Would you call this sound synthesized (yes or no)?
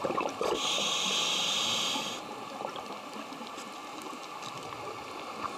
no